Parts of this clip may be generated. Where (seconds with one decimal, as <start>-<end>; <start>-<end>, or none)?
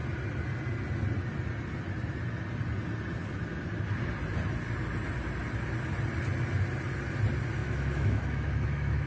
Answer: 7.6-9.1